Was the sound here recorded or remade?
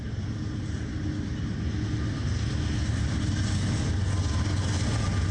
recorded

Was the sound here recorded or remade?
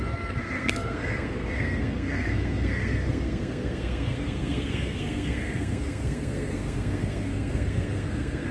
remade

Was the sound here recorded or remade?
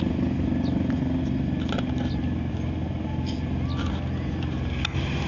recorded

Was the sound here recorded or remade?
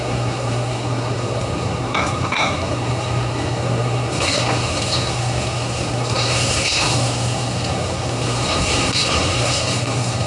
remade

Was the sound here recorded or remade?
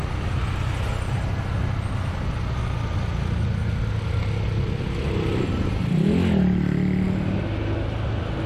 recorded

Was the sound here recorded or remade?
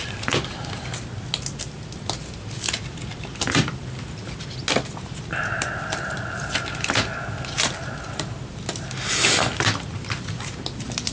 recorded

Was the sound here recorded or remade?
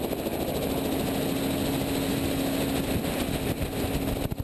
recorded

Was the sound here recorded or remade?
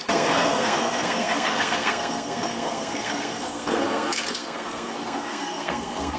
remade